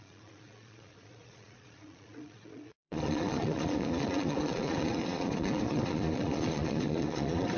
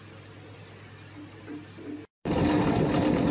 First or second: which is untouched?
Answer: second